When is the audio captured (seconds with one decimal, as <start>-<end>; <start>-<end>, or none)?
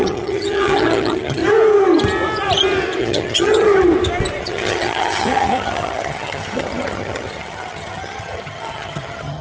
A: 1.4-3.0; 3.7-4.4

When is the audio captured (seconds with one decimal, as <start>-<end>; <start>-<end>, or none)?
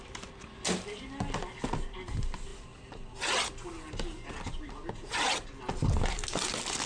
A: 0.0-6.9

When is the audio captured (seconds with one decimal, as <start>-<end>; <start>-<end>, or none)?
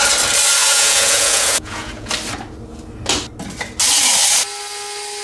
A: 0.0-0.6; 2.1-5.2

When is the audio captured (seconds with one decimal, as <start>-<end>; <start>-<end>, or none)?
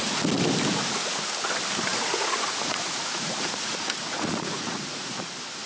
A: 0.0-1.9; 5.3-5.7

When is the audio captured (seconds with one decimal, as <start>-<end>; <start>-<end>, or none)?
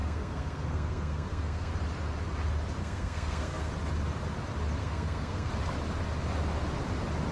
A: 1.7-2.8; 3.7-4.8; 5.5-7.3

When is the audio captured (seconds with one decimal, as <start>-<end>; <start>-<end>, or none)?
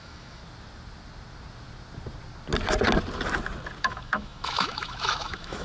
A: 0.4-3.8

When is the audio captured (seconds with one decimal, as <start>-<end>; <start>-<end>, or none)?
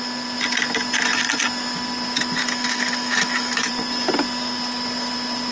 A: 0.0-2.4; 3.7-5.5